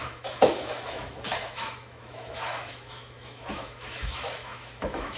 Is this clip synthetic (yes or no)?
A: yes